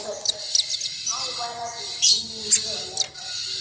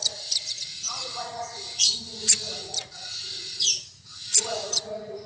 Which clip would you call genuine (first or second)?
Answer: first